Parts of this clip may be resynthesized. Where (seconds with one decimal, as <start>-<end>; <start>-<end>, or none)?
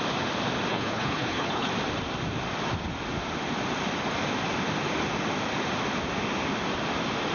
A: 0.7-1.7